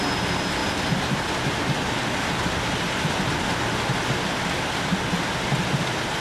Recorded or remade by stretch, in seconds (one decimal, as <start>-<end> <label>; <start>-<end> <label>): 0.0-6.2 recorded

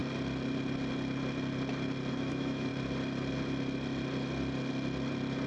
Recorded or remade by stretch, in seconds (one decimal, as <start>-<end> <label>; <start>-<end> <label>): 0.0-2.1 recorded; 2.1-2.7 remade; 2.7-5.5 recorded

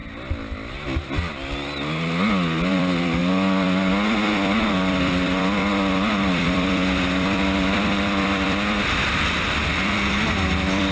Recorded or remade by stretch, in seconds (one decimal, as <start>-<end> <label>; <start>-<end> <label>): 0.0-2.7 recorded; 2.7-10.9 remade